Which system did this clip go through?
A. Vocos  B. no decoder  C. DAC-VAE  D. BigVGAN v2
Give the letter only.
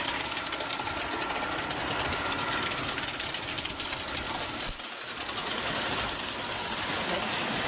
D